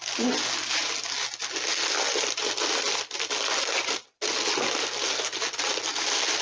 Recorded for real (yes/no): yes